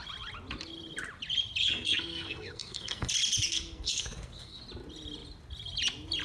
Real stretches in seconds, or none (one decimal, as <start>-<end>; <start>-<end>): 0.0-1.6; 3.1-3.5; 4.6-6.2